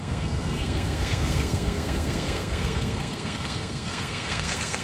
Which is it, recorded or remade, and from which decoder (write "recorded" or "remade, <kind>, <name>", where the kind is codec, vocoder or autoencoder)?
remade, codec, SNAC